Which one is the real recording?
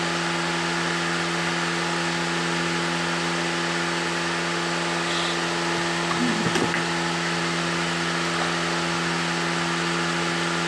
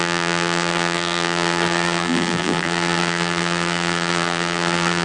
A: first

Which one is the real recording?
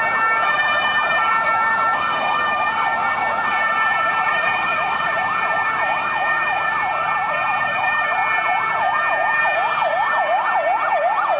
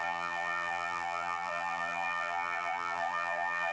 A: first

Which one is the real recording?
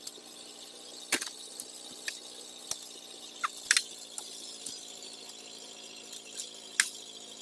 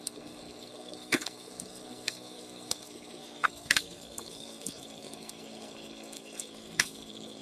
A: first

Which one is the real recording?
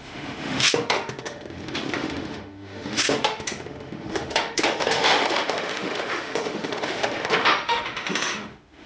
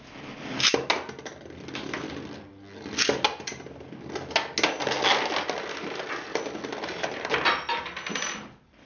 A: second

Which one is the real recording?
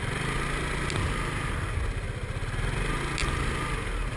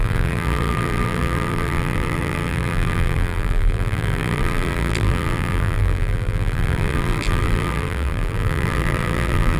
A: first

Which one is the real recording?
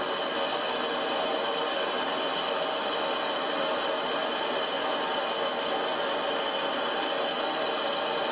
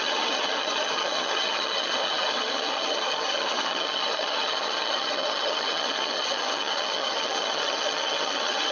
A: first